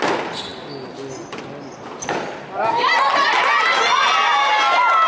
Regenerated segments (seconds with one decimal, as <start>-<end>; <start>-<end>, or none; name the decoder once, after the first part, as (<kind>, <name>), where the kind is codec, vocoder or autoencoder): none